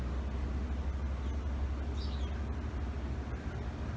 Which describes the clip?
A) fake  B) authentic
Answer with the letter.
B